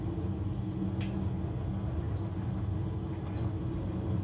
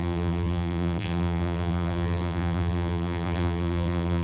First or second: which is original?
first